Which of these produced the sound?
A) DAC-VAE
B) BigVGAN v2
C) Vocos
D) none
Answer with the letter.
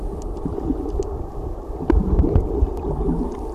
D